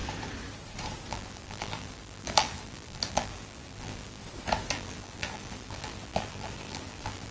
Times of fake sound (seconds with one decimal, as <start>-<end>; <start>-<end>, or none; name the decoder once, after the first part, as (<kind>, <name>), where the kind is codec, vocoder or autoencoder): 1.1-4.2 (vocoder, BigVGAN v2); 4.7-7.3